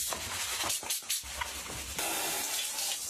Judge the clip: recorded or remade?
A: remade